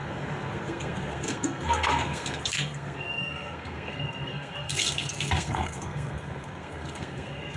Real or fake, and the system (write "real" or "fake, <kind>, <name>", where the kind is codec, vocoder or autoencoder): fake, codec, SNAC